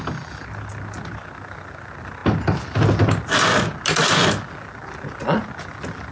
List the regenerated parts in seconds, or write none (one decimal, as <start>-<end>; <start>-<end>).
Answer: none